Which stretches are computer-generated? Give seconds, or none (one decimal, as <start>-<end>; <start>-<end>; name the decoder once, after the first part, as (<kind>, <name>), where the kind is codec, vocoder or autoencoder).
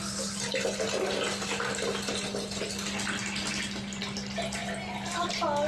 none